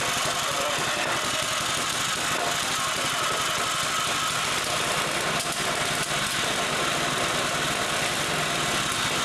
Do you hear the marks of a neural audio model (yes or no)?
no